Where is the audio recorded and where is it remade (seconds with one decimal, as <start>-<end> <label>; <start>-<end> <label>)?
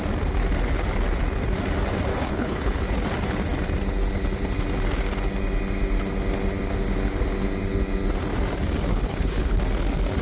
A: 0.0-2.1 recorded; 2.1-2.8 remade; 2.8-8.9 recorded; 8.9-9.6 remade; 9.6-10.2 recorded